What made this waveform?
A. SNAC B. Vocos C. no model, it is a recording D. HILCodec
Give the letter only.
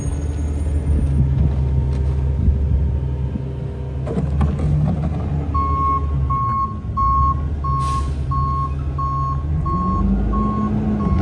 C